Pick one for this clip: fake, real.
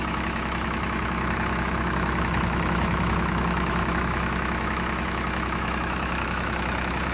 fake